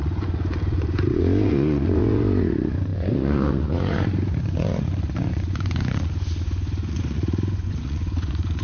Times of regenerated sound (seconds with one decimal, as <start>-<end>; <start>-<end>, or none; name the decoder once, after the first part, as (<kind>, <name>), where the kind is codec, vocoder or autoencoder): 0.0-8.6 (vocoder, Vocos)